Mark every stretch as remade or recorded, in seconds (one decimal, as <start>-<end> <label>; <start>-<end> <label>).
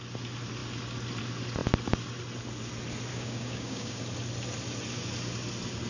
0.0-3.1 recorded; 3.1-4.0 remade; 4.0-5.9 recorded